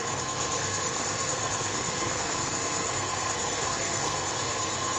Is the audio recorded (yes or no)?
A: no